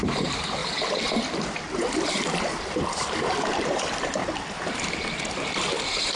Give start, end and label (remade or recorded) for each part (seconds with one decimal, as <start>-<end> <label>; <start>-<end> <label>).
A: 0.0-0.6 remade; 0.6-2.1 recorded; 2.1-4.2 remade; 4.2-6.2 recorded